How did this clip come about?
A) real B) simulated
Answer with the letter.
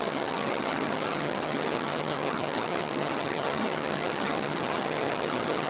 B